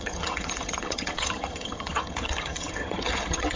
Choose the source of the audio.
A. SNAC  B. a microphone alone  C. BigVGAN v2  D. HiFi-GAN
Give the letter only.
D